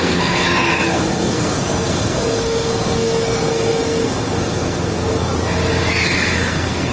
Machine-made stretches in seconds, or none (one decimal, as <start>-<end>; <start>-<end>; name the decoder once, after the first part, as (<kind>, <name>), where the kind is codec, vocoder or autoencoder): 0.0-5.3 (codec, SNAC); 5.9-6.9